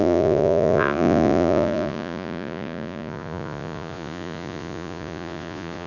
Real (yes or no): no